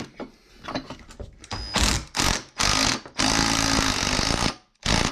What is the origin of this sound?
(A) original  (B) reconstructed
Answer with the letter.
A